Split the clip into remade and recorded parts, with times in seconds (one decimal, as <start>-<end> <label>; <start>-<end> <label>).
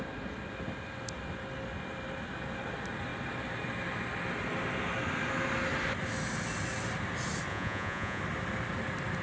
0.0-7.5 recorded; 7.5-8.2 remade; 8.2-9.2 recorded